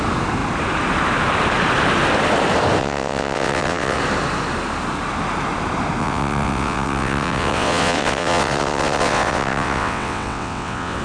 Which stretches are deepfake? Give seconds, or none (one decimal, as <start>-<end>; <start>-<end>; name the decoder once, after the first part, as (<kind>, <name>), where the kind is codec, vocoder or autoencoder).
2.8-4.0 (vocoder, WaveNeXt); 6.0-11.0